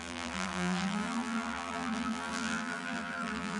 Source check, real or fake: fake